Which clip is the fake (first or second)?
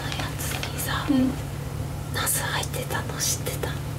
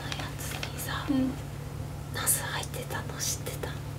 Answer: first